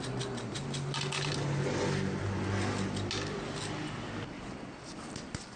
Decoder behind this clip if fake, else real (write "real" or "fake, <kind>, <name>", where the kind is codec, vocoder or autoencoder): real